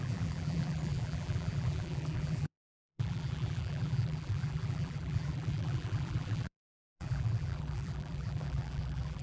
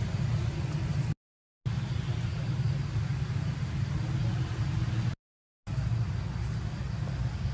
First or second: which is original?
second